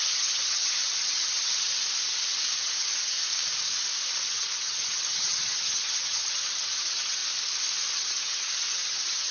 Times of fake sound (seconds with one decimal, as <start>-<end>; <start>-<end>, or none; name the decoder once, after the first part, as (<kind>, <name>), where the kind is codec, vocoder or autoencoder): 0.0-1.7 (vocoder, HiFi-GAN); 2.6-3.2; 4.3-7.2; 7.9-9.3